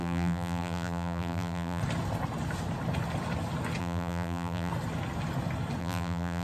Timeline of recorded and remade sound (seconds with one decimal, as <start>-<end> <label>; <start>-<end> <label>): 0.0-1.8 remade; 1.8-3.8 recorded; 3.8-4.7 remade; 4.7-5.8 recorded; 5.8-6.4 remade